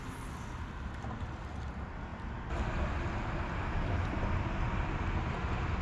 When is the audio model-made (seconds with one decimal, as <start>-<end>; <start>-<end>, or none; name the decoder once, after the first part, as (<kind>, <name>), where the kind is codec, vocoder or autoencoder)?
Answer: none